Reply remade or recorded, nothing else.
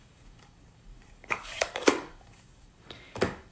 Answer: remade